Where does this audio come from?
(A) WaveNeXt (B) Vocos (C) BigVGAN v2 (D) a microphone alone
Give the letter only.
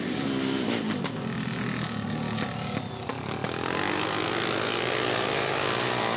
D